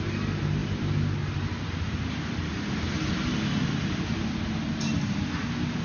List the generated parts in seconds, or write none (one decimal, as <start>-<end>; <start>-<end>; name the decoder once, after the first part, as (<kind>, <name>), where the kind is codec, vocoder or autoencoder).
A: none